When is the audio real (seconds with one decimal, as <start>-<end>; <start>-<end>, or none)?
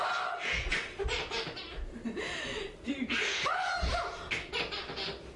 0.0-0.7; 3.9-5.4